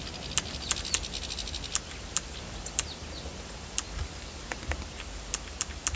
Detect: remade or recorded recorded